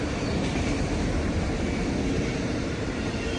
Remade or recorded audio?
remade